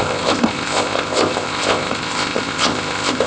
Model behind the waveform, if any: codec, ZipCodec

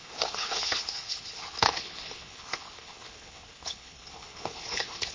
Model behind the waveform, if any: codec, HILCodec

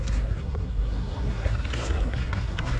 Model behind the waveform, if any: codec, SNAC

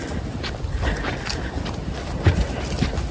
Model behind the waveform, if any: none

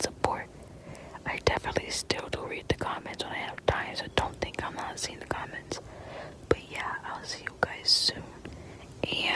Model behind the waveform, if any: none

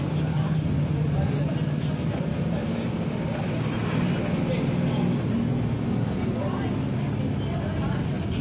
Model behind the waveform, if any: none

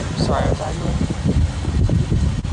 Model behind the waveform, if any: none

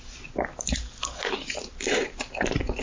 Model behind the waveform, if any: none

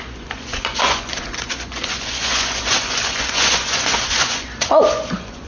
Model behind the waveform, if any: vocoder, Vocos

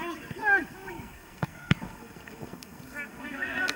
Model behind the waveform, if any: codec, SNAC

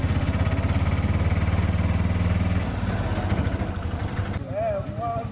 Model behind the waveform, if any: none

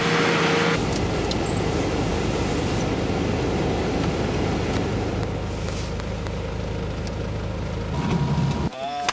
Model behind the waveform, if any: none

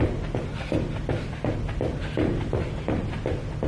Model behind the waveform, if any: none